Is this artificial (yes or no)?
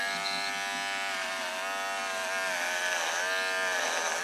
no